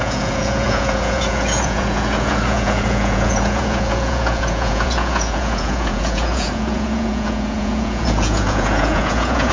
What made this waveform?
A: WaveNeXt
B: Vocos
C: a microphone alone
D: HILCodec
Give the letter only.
B